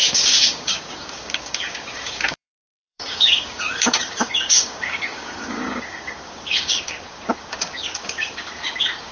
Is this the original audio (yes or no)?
no